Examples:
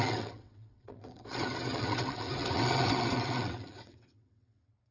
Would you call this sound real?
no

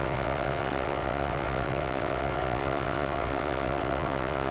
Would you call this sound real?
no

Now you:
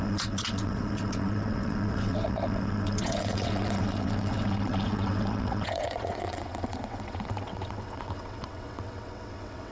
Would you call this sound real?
no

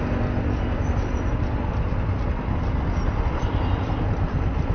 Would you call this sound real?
yes